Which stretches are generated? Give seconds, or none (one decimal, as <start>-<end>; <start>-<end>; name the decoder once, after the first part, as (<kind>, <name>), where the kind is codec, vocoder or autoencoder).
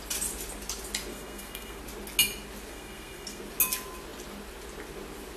1.1-1.8 (codec, SNAC); 2.7-3.4